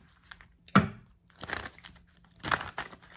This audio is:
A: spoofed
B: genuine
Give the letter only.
B